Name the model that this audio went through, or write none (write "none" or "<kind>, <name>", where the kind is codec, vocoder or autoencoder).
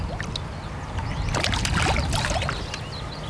none